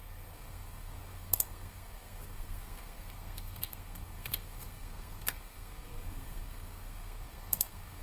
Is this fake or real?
fake